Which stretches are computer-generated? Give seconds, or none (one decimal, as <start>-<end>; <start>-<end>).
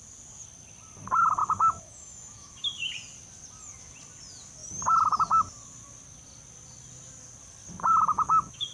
1.4-2.9; 8.1-8.7